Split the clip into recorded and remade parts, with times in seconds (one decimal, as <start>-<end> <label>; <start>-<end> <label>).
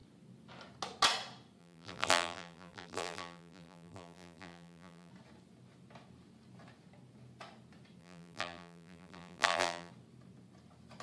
0.0-1.6 recorded; 1.6-5.1 remade; 5.1-8.0 recorded; 8.0-9.9 remade; 9.9-11.0 recorded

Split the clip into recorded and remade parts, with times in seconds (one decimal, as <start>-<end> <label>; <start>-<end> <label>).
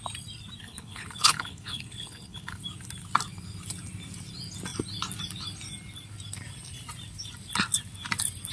0.0-0.6 recorded; 0.6-2.6 remade; 2.6-8.5 recorded